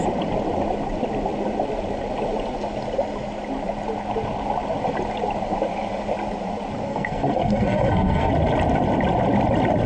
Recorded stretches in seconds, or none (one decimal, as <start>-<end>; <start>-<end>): 0.0-6.9; 8.3-9.9